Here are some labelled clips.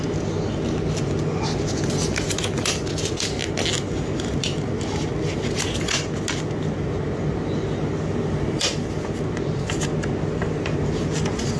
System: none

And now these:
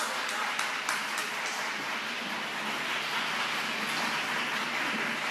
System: none